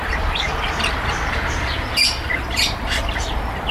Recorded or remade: recorded